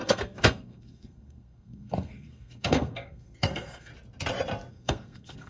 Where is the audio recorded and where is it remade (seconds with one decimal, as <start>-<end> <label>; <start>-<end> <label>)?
0.0-3.9 remade; 3.9-4.7 recorded; 4.7-5.5 remade